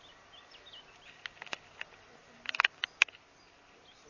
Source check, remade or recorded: recorded